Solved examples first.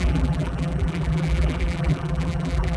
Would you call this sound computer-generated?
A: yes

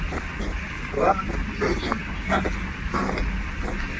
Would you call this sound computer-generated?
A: no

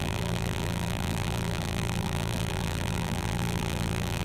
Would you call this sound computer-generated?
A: yes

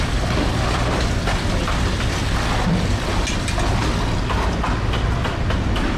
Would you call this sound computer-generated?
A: no